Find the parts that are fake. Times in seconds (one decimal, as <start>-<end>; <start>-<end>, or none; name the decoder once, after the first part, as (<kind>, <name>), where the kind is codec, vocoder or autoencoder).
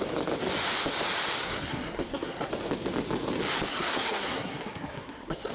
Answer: 1.4-2.5 (codec, SNAC); 3.7-5.5